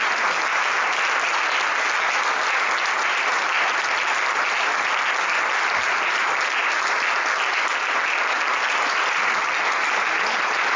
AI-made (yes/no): no